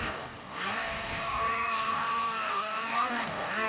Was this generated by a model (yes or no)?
yes